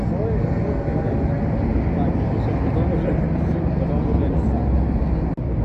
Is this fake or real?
real